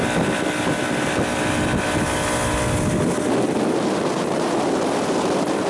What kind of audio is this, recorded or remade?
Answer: recorded